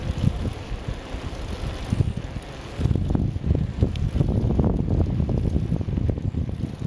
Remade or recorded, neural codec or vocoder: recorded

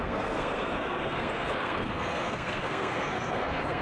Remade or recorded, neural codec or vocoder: remade, codec, SNAC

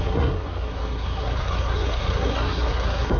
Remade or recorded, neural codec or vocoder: remade, codec, SNAC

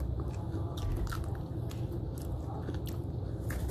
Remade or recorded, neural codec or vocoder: recorded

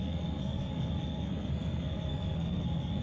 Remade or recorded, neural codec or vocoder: remade, codec, SNAC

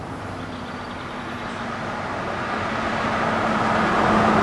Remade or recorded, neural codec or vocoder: recorded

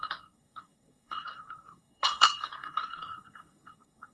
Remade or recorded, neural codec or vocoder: remade, codec, SNAC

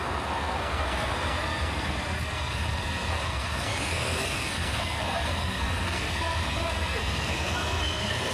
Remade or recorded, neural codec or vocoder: remade, codec, SNAC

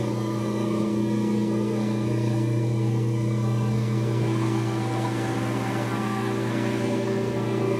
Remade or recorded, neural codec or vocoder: remade, codec, SNAC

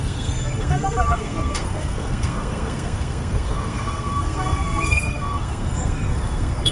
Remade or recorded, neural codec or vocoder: remade, codec, SNAC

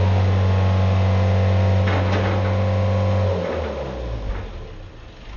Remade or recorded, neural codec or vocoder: recorded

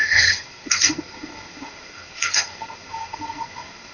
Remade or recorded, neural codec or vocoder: remade, codec, SNAC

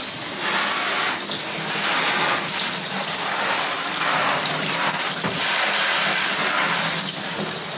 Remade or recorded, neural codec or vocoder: recorded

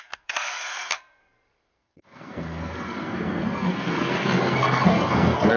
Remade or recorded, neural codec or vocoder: remade, codec, SNAC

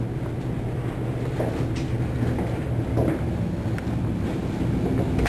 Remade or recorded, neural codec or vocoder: recorded